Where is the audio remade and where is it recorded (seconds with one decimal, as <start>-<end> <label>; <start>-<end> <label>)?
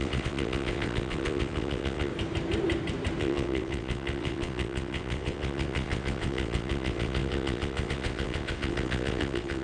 0.0-2.1 remade; 2.1-3.2 recorded; 3.2-9.6 remade